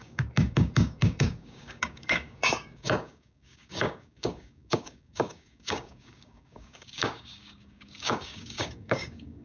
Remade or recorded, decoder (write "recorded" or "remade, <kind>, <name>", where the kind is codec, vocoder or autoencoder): remade, codec, DAC